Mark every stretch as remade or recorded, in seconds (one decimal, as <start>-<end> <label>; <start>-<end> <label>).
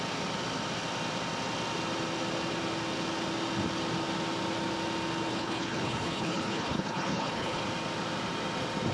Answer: 0.0-5.3 recorded; 5.3-7.6 remade; 7.6-8.9 recorded